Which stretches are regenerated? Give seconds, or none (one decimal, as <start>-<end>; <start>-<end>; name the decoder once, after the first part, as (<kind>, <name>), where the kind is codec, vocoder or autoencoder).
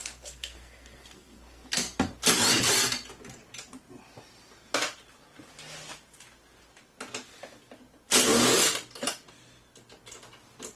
0.0-2.1 (codec, SNAC)